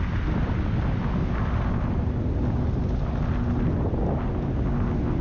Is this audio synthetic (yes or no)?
no